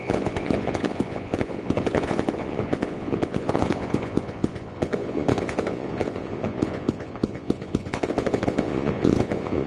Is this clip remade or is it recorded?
remade